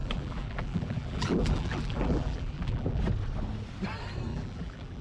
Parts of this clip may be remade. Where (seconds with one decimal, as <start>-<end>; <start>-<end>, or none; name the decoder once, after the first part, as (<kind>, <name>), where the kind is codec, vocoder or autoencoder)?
0.0-3.0 (vocoder, BigVGAN v2); 4.3-5.0